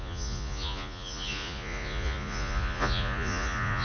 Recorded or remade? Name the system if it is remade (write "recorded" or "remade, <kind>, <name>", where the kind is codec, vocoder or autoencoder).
remade, vocoder, Vocos